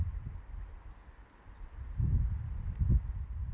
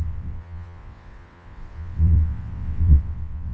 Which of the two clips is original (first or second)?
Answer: first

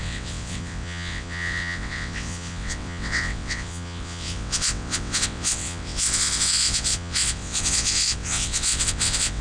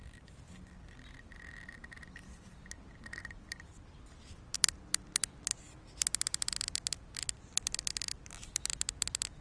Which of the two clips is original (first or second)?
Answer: second